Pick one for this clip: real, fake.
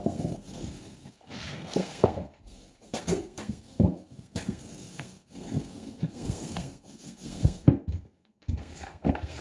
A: fake